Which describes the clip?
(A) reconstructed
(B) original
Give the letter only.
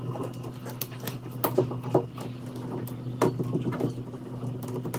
B